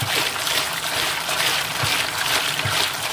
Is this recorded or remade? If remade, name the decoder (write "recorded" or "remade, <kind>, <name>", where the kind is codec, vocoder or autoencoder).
recorded